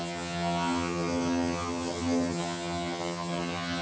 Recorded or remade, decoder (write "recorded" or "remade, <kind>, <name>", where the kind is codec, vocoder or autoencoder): remade, vocoder, HiFi-GAN